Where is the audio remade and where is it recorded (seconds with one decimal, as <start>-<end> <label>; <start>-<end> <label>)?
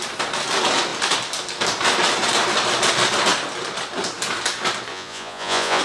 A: 0.0-4.9 recorded; 4.9-5.8 remade